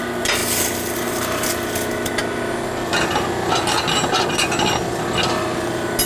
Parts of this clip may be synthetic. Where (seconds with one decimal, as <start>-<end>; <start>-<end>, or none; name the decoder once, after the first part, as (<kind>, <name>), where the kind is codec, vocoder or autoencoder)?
none